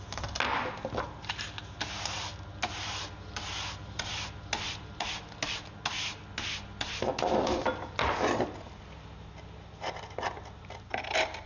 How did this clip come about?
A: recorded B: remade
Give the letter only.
A